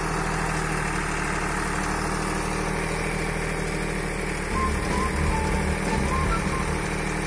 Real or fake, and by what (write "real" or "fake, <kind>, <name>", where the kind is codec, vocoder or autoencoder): real